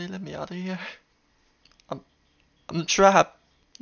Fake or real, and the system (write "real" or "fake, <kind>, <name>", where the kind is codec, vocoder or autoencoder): real